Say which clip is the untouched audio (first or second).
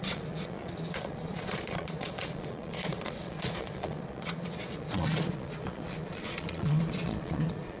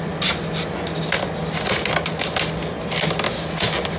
second